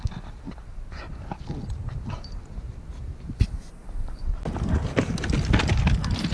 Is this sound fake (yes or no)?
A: no